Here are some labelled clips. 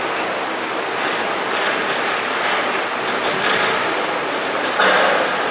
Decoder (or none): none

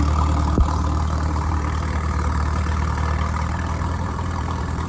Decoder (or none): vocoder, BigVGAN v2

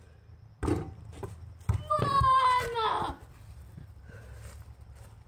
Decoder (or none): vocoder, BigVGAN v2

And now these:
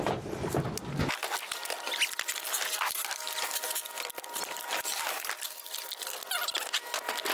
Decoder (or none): none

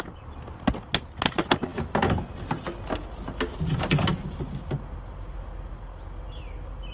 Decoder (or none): none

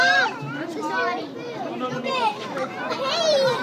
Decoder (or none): vocoder, BigVGAN v2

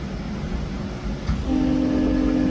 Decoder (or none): none